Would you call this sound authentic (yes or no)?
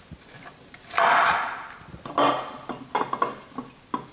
yes